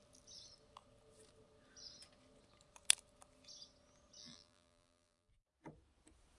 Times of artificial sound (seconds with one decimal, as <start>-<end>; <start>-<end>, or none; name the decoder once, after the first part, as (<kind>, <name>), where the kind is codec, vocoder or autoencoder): 4.2-5.3 (vocoder, BigVGAN v2)